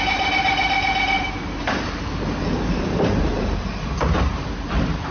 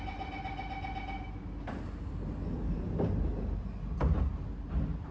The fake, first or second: first